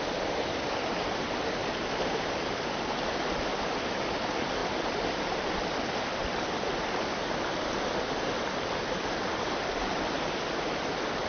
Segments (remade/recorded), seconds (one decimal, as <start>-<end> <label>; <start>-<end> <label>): 0.0-1.6 recorded; 1.6-2.3 remade; 2.3-4.6 recorded; 4.6-8.0 remade; 8.0-11.3 recorded